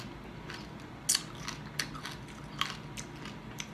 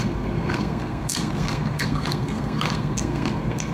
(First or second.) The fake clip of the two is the second